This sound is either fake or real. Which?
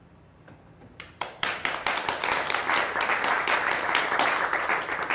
real